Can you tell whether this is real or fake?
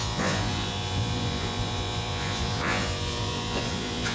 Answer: fake